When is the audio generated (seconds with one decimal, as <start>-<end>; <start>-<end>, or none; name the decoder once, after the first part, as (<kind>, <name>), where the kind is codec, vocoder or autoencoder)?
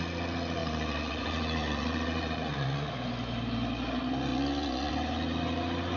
0.6-2.9 (vocoder, Vocos); 4.3-4.9